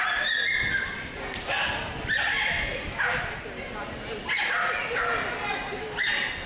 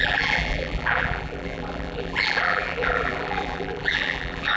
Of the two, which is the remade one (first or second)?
second